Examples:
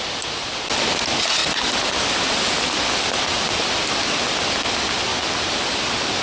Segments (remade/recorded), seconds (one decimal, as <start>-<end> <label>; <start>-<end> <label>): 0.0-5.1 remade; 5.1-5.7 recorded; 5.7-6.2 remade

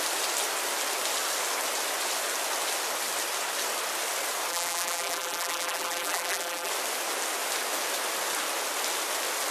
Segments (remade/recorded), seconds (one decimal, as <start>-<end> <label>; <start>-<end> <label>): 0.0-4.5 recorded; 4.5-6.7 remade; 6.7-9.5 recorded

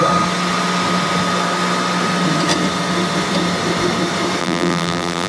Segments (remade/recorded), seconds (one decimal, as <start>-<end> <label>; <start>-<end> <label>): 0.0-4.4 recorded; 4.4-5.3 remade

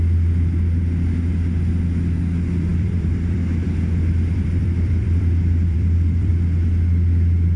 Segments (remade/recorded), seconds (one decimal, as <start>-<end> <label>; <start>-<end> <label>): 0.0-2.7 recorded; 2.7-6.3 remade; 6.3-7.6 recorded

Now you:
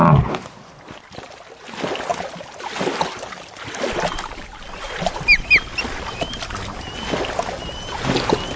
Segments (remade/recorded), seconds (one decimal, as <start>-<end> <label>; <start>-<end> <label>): 0.0-2.1 recorded; 2.1-5.5 remade; 5.5-8.6 recorded